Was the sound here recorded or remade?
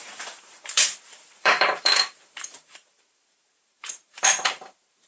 remade